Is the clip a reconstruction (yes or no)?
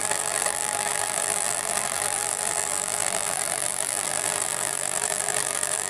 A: yes